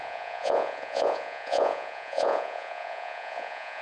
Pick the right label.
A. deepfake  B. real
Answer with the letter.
A